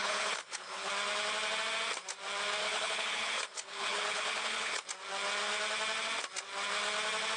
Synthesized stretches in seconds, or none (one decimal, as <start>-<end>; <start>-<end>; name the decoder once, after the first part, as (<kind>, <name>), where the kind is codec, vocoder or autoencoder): 0.0-0.9 (codec, HILCodec); 2.6-4.8

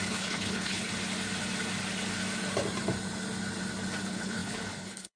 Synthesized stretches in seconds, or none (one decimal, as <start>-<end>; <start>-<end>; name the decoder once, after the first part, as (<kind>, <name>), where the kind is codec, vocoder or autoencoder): 0.0-0.9 (codec, HILCodec); 4.0-5.2

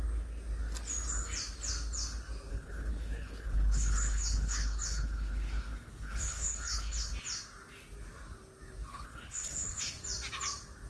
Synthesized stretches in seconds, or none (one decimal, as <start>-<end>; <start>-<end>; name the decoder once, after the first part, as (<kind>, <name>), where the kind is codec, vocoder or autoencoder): 2.5-7.1 (codec, HILCodec); 8.9-9.9

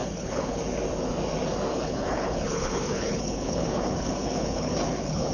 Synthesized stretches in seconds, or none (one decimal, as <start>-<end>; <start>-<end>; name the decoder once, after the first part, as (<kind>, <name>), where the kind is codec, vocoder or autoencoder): 0.0-0.6 (codec, HILCodec); 1.7-5.3